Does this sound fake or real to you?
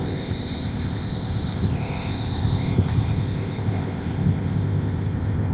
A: fake